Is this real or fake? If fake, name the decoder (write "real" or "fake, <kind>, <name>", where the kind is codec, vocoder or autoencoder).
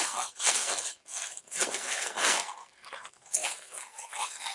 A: fake, codec, SNAC